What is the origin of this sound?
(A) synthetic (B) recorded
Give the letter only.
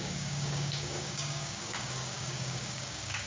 A